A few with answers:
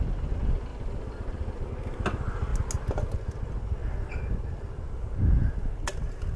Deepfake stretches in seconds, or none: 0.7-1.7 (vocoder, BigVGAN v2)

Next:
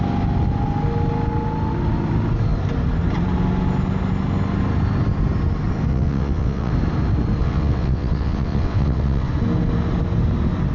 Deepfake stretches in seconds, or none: 5.9-6.7 (vocoder, WaveNeXt); 7.4-9.3

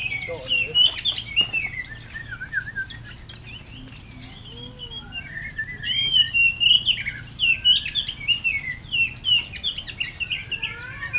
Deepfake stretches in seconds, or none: none

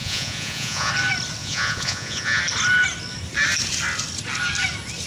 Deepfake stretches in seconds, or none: 0.0-0.9 (vocoder, Vocos); 1.4-2.4

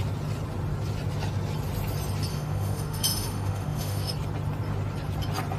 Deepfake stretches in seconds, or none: 2.3-4.1 (autoencoder, DAC-VAE)